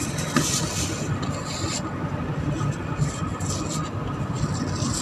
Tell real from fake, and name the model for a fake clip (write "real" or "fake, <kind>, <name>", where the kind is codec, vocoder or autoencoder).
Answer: real